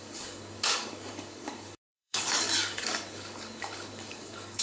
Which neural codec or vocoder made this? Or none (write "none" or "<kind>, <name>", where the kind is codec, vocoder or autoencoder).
codec, DAC